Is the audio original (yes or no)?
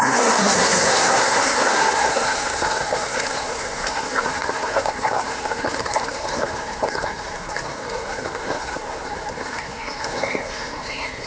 no